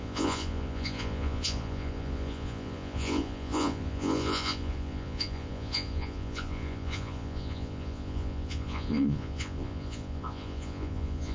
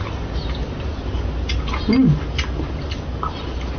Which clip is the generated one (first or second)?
first